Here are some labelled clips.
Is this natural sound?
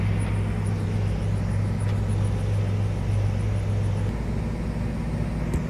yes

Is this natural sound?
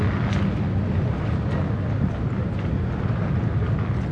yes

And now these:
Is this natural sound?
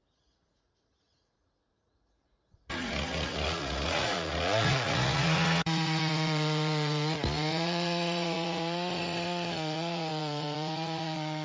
no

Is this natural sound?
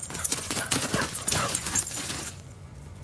no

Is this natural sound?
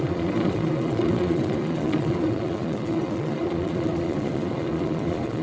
no